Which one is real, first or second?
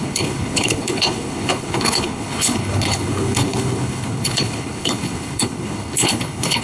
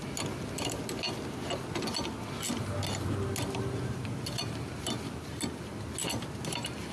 second